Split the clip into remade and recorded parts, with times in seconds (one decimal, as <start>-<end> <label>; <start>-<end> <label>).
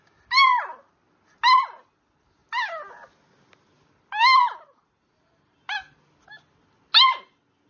0.0-7.7 recorded